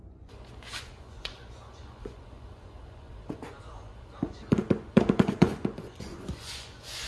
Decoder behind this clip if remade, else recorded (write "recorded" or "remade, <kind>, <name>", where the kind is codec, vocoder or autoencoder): remade, vocoder, Vocos